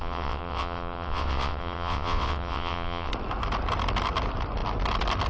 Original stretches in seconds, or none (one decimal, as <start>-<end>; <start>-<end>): 3.1-5.3